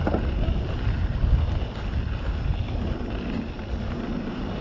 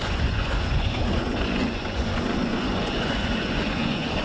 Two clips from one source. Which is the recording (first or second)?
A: first